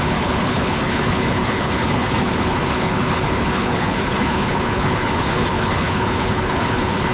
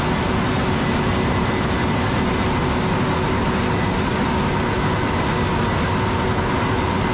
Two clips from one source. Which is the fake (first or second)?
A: first